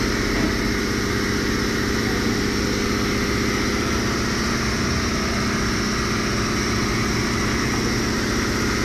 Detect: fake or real real